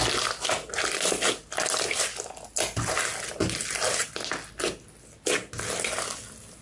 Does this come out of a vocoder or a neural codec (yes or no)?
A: no